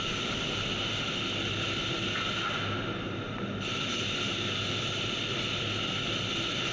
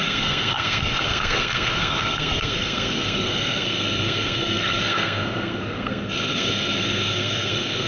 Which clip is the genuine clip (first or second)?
first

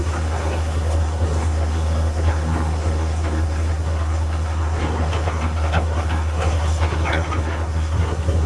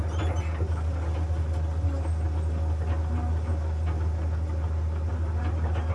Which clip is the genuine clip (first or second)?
second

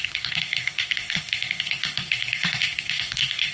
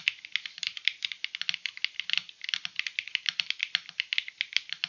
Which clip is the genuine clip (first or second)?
second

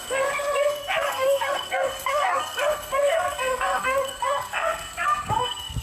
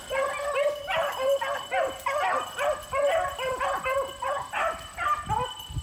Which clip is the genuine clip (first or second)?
second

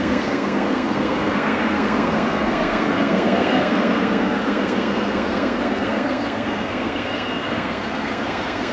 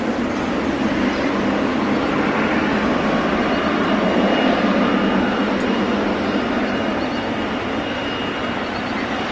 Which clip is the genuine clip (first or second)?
second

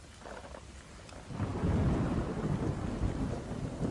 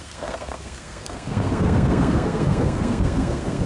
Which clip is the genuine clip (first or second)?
first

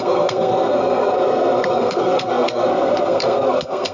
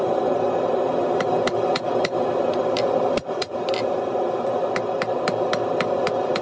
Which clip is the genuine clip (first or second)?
second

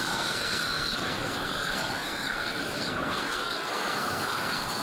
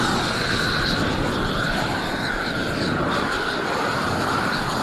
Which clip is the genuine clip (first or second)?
second